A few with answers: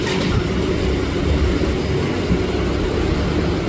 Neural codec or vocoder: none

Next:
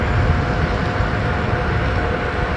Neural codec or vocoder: none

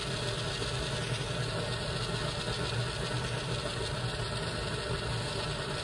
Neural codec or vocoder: none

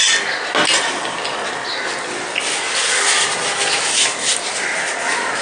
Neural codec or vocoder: none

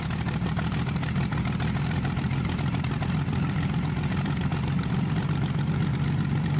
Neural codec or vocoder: vocoder, BigVGAN v2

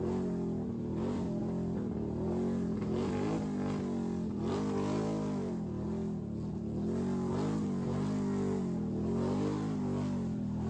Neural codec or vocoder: none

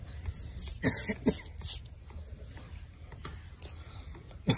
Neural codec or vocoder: none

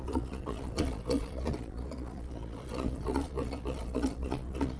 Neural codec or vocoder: vocoder, Vocos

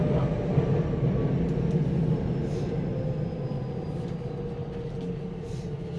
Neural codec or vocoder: none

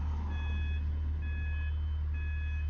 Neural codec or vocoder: none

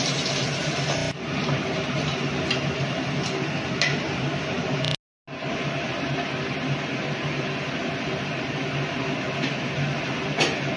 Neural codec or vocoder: none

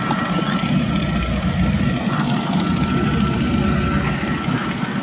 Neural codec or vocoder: none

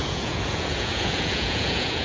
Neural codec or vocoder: vocoder, Vocos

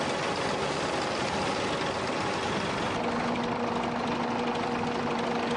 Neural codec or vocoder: none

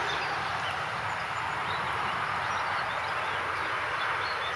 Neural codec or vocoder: none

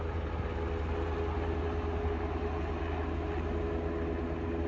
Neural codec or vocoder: none